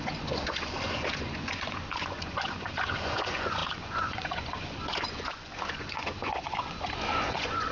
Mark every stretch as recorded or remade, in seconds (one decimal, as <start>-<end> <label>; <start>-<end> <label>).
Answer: 0.0-7.7 remade